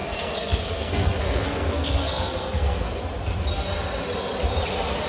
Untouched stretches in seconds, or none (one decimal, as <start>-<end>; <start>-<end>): 3.0-5.1